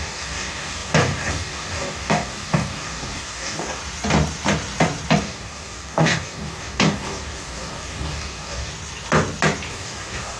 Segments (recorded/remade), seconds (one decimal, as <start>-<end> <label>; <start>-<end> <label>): 0.0-3.8 remade; 3.8-5.2 recorded; 5.2-8.7 remade; 8.7-9.7 recorded; 9.7-10.4 remade